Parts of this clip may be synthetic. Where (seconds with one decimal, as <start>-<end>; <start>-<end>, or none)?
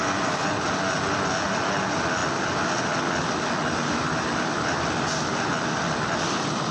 none